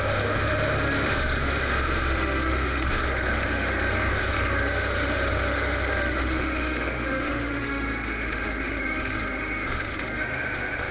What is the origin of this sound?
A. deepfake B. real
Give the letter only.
A